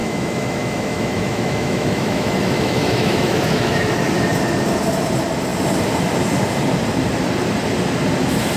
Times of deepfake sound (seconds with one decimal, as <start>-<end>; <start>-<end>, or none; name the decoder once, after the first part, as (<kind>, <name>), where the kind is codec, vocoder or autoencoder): 0.0-3.9 (autoencoder, DAC-VAE)